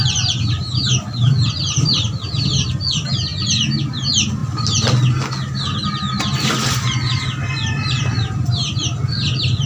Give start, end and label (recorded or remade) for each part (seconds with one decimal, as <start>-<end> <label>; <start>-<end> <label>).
0.0-9.7 recorded